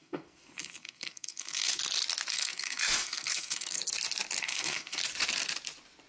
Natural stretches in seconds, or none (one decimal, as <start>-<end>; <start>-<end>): 1.8-2.3; 3.8-4.4; 5.0-6.1